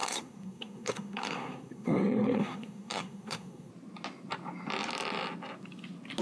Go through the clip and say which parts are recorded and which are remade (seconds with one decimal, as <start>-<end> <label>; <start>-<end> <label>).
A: 0.0-3.7 remade; 3.7-6.2 recorded